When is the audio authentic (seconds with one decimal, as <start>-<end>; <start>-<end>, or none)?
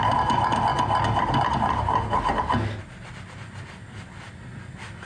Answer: 0.0-5.1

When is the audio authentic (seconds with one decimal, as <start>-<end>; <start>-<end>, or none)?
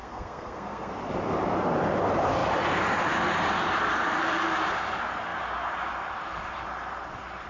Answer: 0.9-7.5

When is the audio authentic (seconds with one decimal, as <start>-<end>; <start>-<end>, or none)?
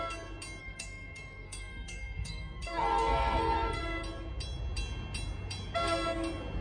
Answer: 0.0-0.6; 3.8-6.6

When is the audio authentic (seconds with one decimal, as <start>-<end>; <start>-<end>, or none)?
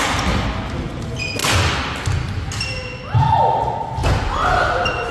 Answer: 0.0-5.1